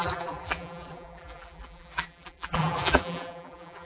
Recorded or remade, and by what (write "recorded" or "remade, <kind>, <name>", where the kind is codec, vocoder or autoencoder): remade, vocoder, BigVGAN v2